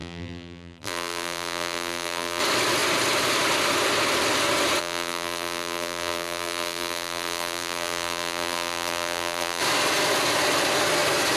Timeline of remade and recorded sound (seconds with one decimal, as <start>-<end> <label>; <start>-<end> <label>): 0.0-2.4 remade; 2.4-4.8 recorded; 4.8-9.6 remade; 9.6-11.4 recorded